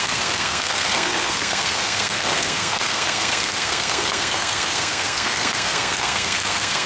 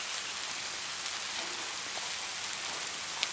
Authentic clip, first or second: second